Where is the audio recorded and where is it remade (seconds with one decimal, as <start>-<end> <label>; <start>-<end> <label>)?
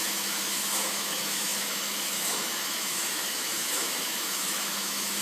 0.0-5.2 remade